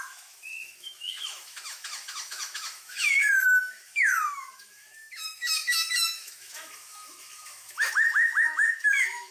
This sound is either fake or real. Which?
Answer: fake